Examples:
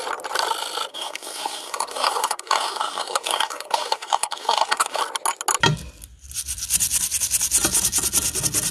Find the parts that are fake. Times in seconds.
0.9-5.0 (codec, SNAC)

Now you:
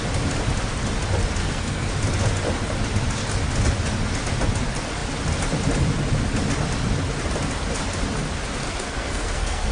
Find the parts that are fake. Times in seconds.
1.4-1.9 (codec, SNAC); 8.6-9.7

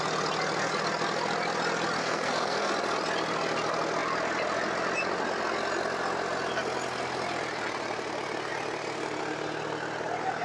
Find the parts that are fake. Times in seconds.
2.0-2.7 (codec, SNAC)